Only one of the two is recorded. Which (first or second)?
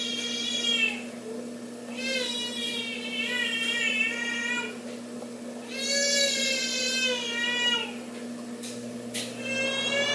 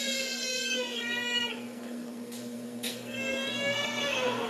first